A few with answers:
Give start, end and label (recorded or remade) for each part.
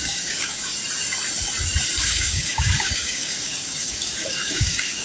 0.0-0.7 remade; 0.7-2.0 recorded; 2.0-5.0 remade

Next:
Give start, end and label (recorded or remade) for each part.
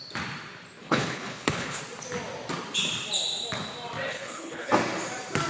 0.0-0.8 recorded; 0.8-1.8 remade; 1.8-4.1 recorded; 4.1-4.7 remade; 4.7-5.5 recorded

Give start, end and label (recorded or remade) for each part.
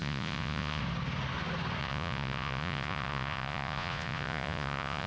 0.0-0.8 remade; 0.8-1.8 recorded; 1.8-5.1 remade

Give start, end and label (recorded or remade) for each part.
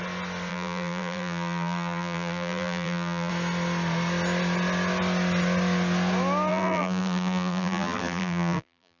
0.0-0.5 recorded; 0.5-3.3 remade; 3.3-6.5 recorded; 6.5-9.0 remade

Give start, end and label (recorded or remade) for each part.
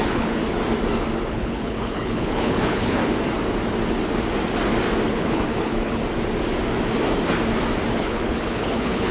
0.0-0.4 remade; 0.4-1.3 recorded; 1.3-3.0 remade; 3.0-5.1 recorded; 5.1-6.0 remade; 6.0-7.9 recorded; 7.9-9.1 remade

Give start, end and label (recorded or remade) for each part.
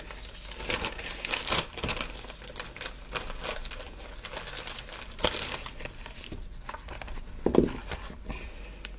0.0-9.0 recorded